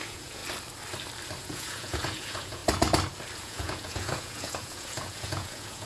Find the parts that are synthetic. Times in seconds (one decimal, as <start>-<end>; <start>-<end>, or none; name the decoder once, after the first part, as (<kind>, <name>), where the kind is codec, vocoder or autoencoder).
0.0-0.4 (vocoder, Vocos); 1.4-2.6; 3.4-5.9